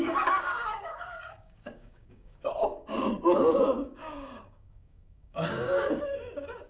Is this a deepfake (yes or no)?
yes